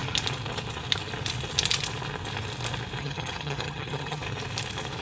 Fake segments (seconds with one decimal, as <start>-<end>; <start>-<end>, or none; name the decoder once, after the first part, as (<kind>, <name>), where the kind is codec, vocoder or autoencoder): 3.0-4.2 (vocoder, HiFi-GAN)